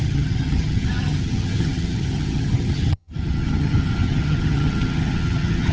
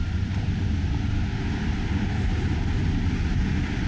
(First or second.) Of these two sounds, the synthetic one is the first